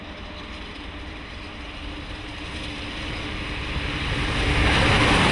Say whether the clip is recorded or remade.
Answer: recorded